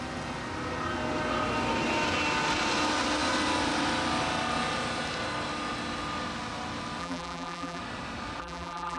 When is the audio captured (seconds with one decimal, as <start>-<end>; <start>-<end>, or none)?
0.0-7.0; 7.8-8.4